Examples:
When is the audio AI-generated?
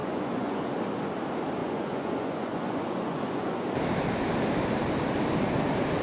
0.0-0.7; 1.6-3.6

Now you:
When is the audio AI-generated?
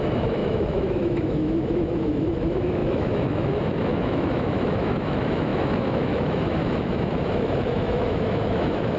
0.0-9.0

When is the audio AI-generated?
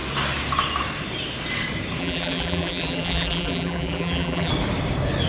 2.0-4.5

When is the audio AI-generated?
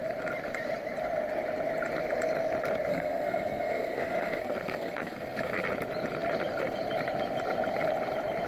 2.9-5.7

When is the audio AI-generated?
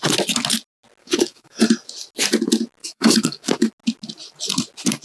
1.0-1.7; 2.8-3.7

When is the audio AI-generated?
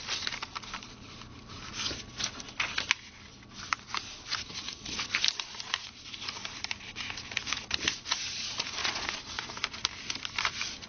8.8-9.5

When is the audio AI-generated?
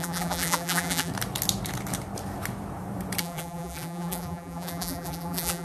0.0-1.1; 3.2-5.6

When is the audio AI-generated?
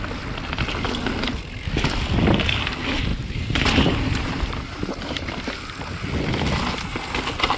3.1-5.4